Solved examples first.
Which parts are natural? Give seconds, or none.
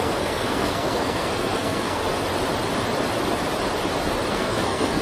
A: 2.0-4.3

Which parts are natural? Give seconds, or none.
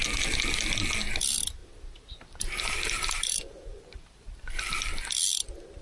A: 0.0-1.6; 4.6-5.8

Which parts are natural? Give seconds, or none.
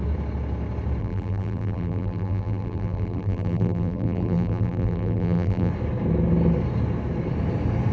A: 0.0-1.0; 5.7-7.9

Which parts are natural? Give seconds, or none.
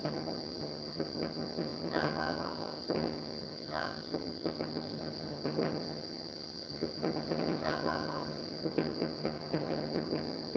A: none